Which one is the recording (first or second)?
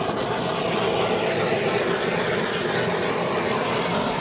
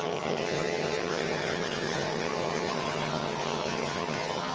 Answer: first